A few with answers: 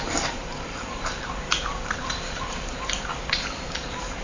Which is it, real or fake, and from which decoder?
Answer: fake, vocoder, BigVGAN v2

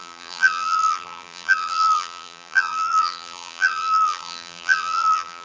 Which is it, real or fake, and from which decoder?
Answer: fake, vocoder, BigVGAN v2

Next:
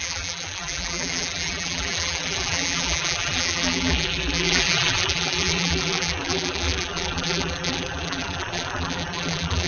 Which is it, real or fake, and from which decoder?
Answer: fake, vocoder, BigVGAN v2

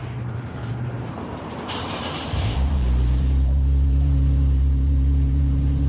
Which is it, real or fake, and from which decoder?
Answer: fake, vocoder, BigVGAN v2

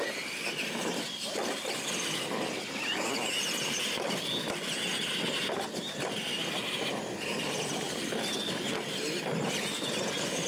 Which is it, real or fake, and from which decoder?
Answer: real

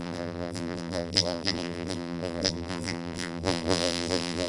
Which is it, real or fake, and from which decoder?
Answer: fake, vocoder, BigVGAN v2